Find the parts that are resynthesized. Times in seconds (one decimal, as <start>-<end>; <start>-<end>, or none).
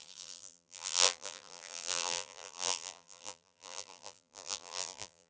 0.0-5.3